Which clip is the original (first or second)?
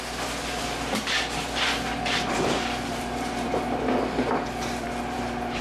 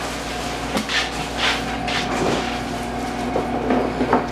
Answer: second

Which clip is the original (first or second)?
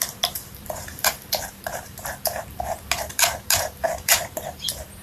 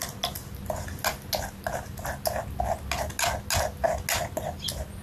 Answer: second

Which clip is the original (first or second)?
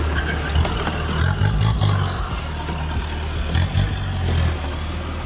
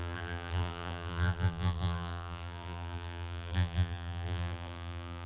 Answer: first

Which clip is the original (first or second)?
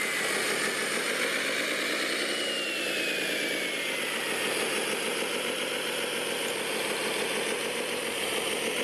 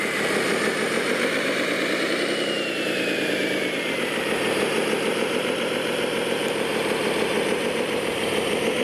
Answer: first